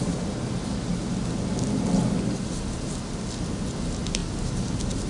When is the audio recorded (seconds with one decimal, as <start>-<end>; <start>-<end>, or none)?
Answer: 0.0-5.1